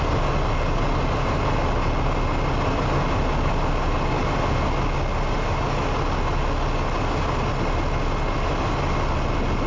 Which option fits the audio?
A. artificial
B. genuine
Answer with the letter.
B